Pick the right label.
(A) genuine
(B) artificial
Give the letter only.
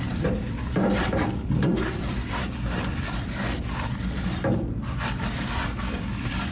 B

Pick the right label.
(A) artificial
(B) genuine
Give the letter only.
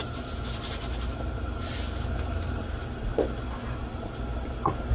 B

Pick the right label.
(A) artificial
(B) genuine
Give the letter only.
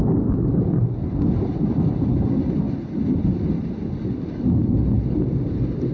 B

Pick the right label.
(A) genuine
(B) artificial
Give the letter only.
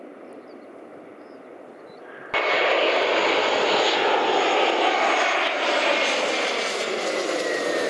A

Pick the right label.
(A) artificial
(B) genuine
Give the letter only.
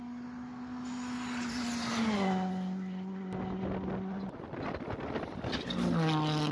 B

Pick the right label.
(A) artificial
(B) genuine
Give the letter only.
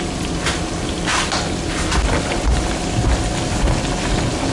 B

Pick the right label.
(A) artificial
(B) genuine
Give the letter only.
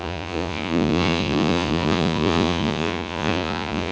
A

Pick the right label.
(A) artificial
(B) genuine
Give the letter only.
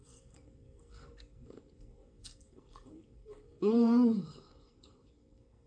A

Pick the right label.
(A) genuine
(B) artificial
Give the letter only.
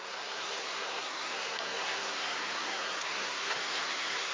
B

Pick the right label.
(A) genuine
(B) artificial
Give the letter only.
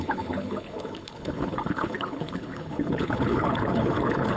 B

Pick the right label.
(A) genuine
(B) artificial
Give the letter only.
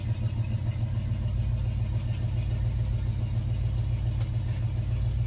A